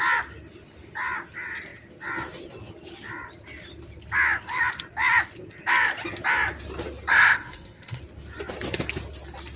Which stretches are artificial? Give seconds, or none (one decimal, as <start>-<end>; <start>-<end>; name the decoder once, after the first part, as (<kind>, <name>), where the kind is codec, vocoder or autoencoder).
7.1-8.0 (codec, SNAC)